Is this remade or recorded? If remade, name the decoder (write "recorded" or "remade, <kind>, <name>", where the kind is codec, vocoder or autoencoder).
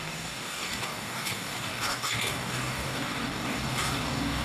remade, codec, DAC